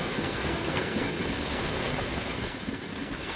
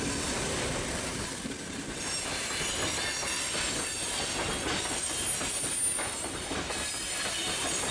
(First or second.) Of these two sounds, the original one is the second